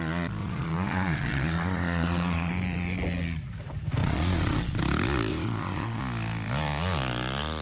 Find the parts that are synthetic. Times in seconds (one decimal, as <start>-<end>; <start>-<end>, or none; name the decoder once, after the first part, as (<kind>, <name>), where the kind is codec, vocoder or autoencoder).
0.4-2.5 (vocoder, Vocos); 4.0-4.8; 5.3-6.0